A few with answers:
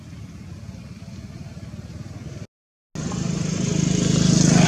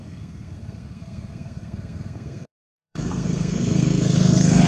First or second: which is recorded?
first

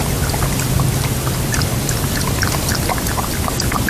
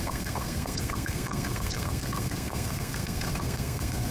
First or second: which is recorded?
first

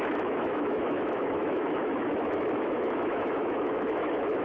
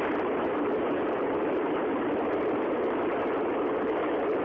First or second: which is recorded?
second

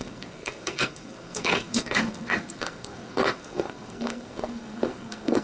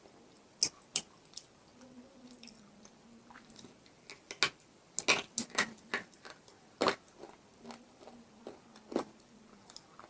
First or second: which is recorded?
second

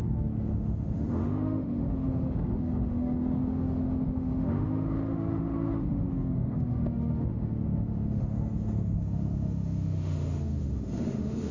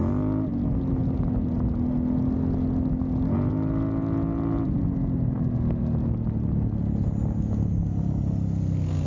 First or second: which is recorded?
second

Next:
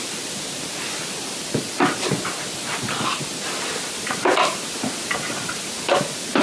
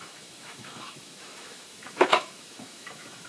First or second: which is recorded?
first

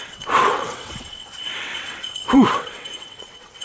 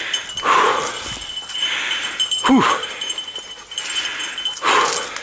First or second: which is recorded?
second